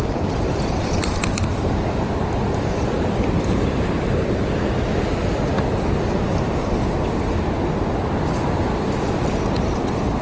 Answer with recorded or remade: recorded